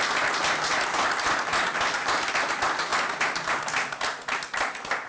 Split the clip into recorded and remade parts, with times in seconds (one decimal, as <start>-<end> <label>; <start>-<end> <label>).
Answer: 0.0-5.1 recorded